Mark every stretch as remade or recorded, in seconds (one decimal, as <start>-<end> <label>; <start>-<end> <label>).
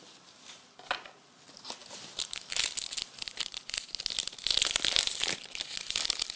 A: 0.0-6.4 recorded